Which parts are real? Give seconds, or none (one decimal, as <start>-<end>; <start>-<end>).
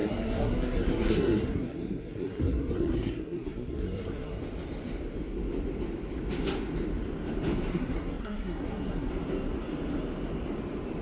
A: 4.4-7.7; 9.1-11.0